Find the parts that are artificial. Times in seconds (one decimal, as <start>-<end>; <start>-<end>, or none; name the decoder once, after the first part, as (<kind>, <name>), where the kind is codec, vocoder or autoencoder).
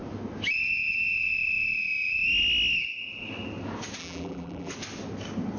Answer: 4.0-4.7 (vocoder, BigVGAN v2)